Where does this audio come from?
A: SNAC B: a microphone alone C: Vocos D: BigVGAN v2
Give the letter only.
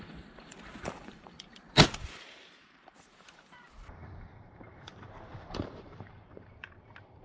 D